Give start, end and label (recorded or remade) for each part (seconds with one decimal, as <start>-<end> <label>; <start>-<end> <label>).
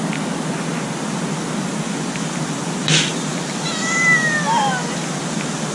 0.0-5.7 recorded